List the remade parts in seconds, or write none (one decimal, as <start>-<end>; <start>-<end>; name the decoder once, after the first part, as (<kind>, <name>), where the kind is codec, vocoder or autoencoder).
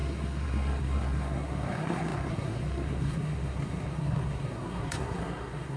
0.0-5.8 (codec, SNAC)